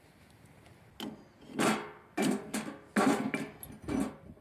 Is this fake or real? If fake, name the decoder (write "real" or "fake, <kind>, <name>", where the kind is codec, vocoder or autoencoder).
real